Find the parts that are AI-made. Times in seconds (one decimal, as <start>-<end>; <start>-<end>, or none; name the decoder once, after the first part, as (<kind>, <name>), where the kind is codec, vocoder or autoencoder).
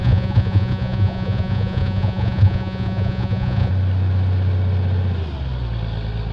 0.0-3.7 (vocoder, Vocos)